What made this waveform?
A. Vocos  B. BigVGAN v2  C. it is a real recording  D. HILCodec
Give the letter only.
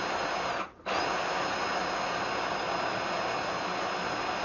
C